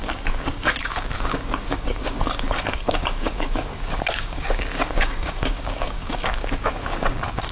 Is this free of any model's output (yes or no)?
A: no